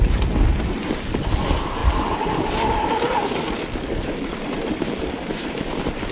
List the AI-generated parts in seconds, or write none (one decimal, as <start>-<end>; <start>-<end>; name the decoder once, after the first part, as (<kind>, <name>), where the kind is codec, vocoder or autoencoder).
none